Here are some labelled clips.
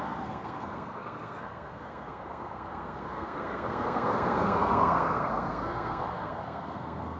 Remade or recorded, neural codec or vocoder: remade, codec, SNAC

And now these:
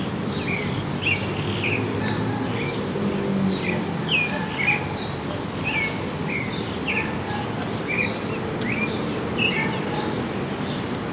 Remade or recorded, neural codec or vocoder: recorded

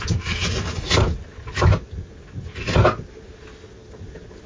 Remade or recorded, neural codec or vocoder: recorded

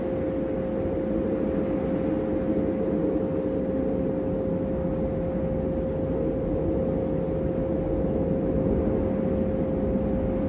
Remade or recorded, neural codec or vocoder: recorded